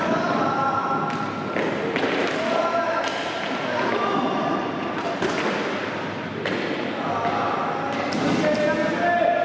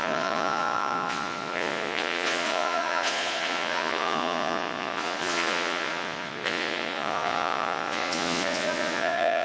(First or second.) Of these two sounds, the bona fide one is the first